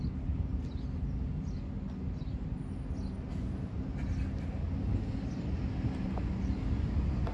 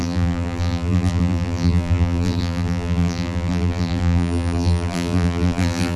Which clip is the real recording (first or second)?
first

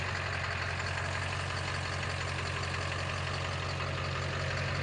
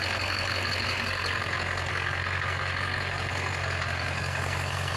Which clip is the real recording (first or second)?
first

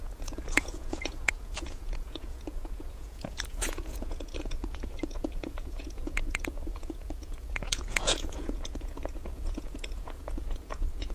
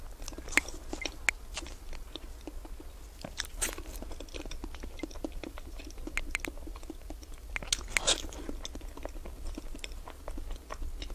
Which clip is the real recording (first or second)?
second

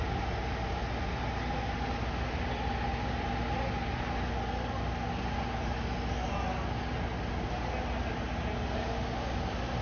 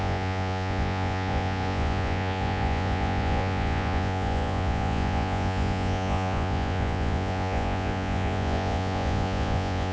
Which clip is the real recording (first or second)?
first